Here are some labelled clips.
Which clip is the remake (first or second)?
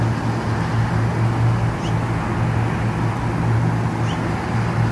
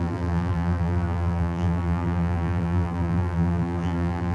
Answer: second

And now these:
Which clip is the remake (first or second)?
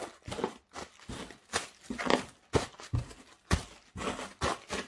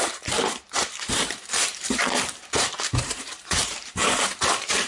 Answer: second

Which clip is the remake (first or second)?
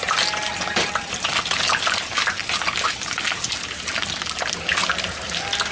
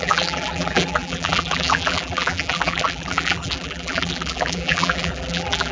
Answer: second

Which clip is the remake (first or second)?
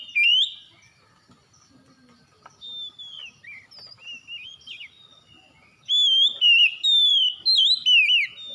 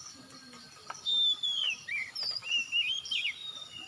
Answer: second